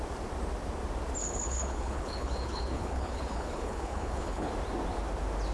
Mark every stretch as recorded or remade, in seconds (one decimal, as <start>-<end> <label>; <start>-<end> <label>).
0.0-1.2 recorded; 1.2-4.5 remade; 4.5-5.5 recorded